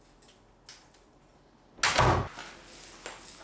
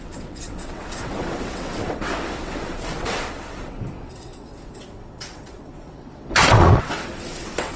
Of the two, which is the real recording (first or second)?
first